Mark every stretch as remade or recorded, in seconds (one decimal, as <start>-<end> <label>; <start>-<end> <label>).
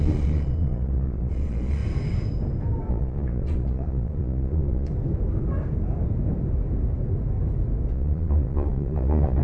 0.0-1.8 remade; 1.8-2.9 recorded; 2.9-4.9 remade; 4.9-7.9 recorded; 7.9-9.4 remade